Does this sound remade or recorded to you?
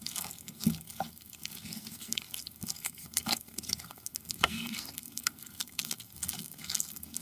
remade